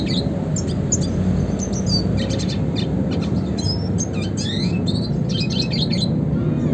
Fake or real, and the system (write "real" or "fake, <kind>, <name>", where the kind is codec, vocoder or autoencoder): real